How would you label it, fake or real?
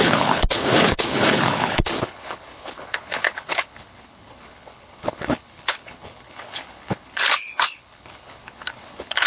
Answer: fake